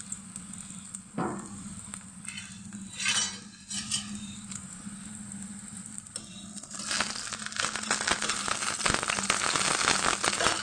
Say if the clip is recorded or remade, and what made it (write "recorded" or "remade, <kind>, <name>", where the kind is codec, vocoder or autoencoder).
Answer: recorded